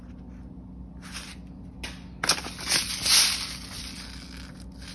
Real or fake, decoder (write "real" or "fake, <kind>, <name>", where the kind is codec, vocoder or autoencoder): real